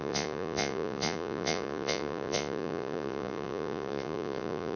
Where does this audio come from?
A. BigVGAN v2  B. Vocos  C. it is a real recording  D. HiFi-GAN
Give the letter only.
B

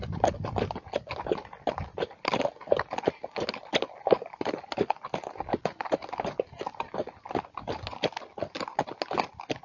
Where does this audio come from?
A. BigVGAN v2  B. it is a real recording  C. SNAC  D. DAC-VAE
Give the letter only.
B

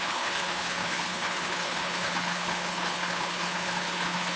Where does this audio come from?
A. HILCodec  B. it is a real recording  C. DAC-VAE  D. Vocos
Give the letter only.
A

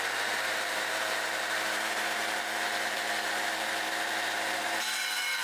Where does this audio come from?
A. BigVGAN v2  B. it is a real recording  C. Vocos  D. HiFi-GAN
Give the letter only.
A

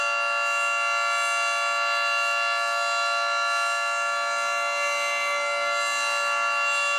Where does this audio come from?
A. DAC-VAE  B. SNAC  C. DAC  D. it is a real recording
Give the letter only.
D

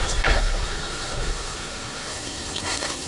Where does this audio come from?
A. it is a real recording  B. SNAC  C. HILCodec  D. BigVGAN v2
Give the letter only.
B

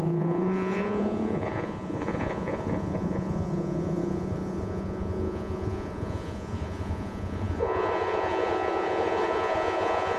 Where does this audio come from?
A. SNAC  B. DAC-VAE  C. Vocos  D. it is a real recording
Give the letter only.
C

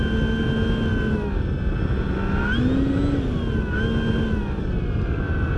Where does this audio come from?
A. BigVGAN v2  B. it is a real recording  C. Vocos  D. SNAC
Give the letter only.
B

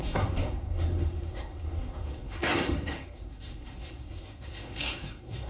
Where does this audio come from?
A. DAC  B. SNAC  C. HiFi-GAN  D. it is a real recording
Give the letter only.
B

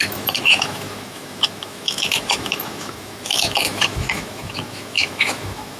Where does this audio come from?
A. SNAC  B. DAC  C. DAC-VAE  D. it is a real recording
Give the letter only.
C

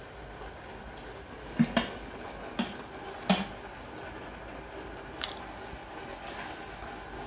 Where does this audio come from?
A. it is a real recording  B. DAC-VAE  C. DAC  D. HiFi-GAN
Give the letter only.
A